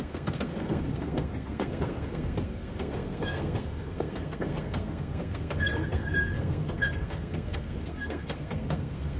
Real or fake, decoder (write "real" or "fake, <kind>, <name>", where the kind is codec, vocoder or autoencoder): fake, codec, SNAC